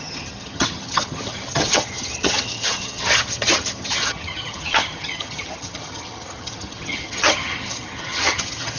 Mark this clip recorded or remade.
remade